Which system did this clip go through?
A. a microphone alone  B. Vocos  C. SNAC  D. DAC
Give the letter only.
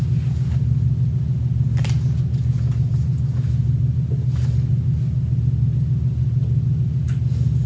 A